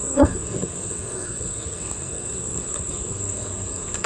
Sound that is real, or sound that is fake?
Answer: fake